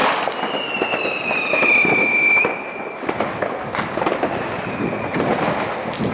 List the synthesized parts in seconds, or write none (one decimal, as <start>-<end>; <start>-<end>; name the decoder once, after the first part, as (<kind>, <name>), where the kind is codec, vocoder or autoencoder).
none